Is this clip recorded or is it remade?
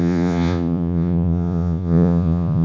remade